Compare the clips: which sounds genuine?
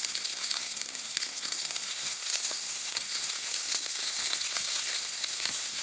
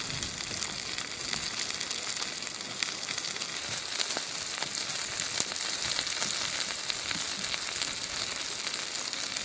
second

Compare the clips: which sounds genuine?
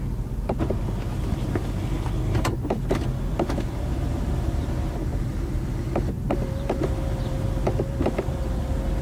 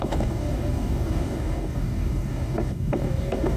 first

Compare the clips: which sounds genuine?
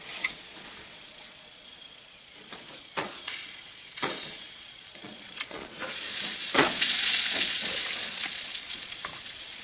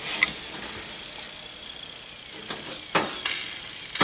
second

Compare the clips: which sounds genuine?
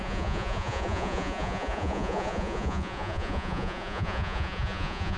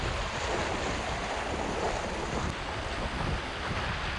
second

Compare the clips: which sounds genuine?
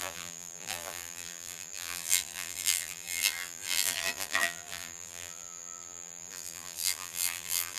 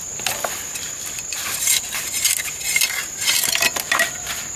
second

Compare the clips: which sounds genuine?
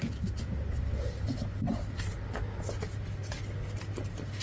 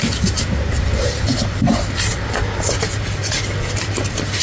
first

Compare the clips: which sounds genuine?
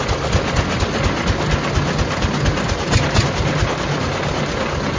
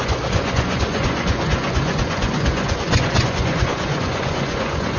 first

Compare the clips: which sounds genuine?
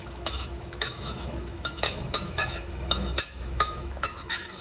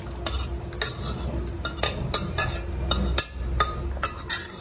second